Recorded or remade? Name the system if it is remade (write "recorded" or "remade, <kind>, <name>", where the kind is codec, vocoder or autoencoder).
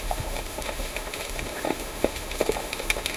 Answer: remade, autoencoder, DAC-VAE